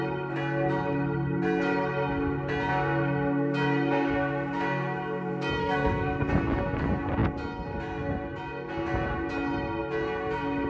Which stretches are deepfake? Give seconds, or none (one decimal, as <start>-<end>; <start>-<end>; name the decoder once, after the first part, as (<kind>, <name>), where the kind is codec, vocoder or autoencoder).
5.6-6.3 (codec, SNAC)